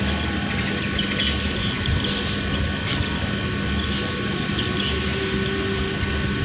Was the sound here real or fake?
real